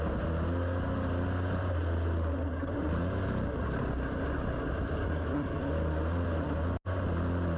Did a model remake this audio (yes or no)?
no